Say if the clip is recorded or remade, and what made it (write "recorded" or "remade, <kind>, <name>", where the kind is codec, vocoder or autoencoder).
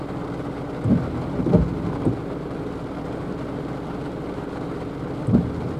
recorded